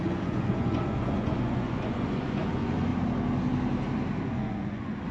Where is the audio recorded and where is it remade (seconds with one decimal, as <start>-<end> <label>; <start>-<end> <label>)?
0.0-2.9 remade; 2.9-4.4 recorded; 4.4-5.1 remade